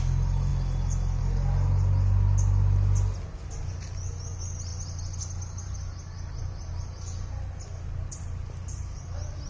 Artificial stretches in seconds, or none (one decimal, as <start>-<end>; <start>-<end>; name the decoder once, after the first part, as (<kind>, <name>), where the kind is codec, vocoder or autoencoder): none